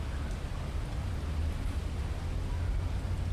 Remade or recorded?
recorded